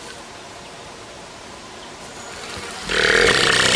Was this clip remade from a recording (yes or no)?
no